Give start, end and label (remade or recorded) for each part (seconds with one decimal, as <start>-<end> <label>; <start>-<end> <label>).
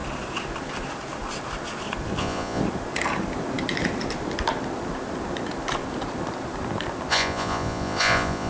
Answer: 0.0-2.2 recorded; 2.2-2.6 remade; 2.6-7.1 recorded; 7.1-8.5 remade